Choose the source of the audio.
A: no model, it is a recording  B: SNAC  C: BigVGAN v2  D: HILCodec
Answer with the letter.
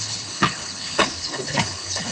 D